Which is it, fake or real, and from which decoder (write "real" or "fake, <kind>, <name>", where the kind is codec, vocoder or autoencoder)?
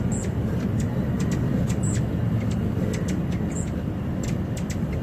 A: real